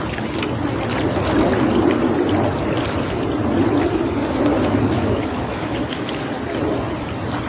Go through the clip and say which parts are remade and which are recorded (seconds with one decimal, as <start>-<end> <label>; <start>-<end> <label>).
0.0-4.5 recorded; 4.5-6.1 remade; 6.1-7.5 recorded